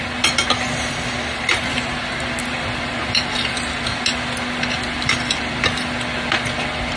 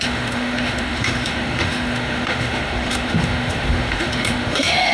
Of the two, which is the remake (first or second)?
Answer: second